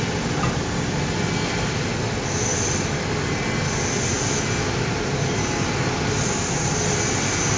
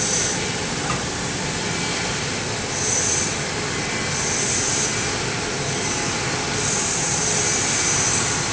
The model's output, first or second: second